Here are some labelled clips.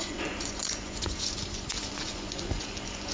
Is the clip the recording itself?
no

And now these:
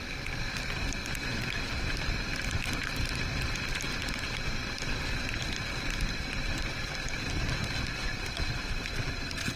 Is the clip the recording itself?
yes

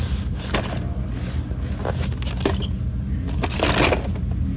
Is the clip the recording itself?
yes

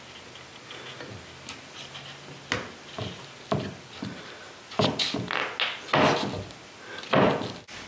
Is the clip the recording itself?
yes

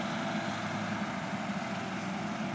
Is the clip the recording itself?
yes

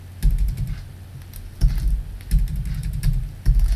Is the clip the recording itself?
yes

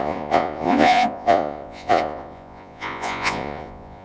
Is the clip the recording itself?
no